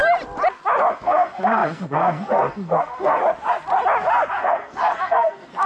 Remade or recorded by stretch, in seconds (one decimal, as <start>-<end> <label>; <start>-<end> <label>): 0.0-0.9 recorded; 0.9-3.2 remade; 3.2-4.3 recorded; 4.3-5.7 remade